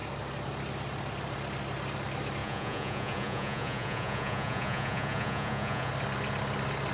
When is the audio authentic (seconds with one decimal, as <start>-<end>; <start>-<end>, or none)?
0.0-2.4; 5.9-6.9